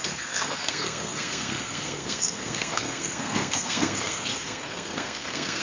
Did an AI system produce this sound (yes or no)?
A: yes